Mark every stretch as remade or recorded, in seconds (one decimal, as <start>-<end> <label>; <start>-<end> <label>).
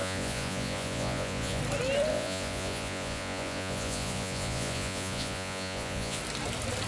0.0-1.6 remade; 1.6-2.1 recorded; 2.1-6.2 remade; 6.2-6.9 recorded